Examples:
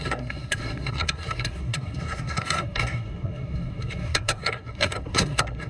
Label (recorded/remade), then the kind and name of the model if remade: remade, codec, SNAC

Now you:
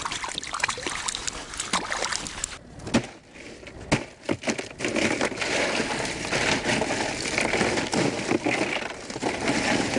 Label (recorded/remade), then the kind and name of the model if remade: recorded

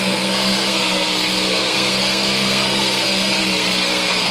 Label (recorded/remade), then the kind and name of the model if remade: remade, codec, SNAC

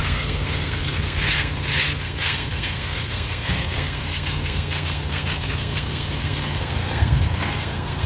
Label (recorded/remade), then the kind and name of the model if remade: remade, codec, SNAC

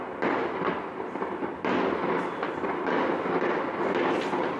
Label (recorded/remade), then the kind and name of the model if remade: recorded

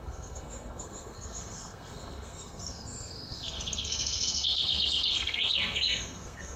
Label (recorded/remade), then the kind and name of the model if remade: remade, codec, SNAC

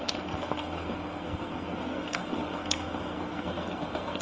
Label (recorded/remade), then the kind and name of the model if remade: remade, codec, SNAC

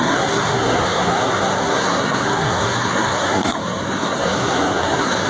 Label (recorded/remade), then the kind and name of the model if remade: remade, codec, SNAC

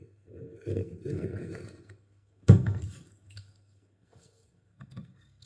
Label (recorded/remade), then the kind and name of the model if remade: remade, codec, SNAC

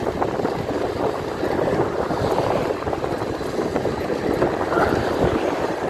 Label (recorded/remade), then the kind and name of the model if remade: recorded